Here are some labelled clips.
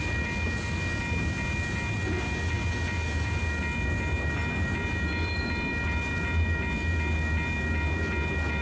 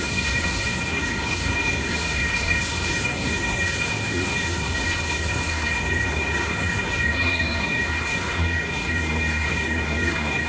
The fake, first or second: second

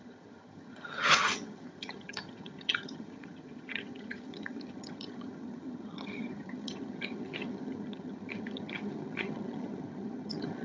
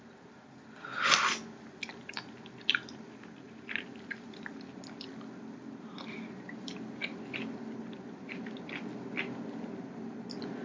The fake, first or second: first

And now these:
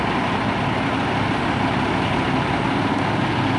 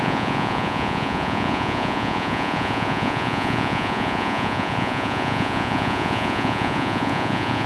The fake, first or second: second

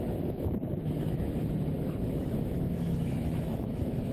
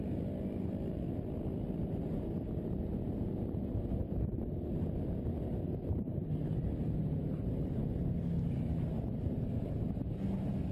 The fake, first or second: first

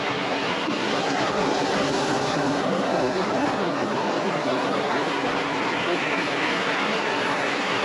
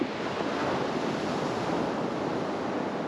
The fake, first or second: first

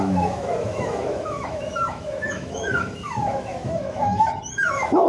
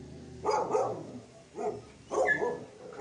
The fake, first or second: first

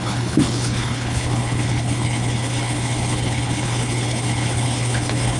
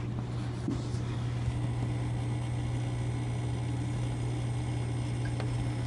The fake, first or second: first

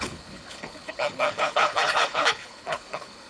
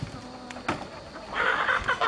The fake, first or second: first